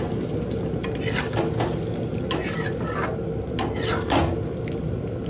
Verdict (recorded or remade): recorded